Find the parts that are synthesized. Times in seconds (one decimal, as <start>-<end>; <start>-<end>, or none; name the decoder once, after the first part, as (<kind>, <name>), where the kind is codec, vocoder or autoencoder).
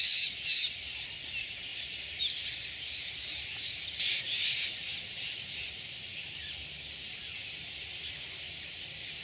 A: none